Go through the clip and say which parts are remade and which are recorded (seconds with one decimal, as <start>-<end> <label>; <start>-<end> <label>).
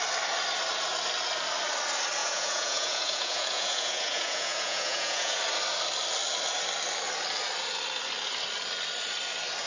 0.0-2.2 recorded; 2.2-5.4 remade; 5.4-9.7 recorded